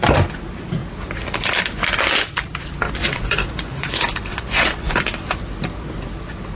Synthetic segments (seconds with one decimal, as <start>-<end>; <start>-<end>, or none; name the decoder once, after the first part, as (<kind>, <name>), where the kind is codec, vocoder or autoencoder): 3.0-5.0 (vocoder, Vocos)